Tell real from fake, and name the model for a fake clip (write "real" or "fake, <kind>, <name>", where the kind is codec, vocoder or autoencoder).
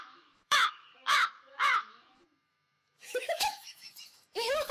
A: fake, autoencoder, DAC-VAE